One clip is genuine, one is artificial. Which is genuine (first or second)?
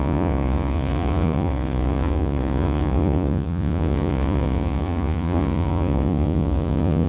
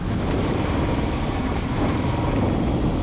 second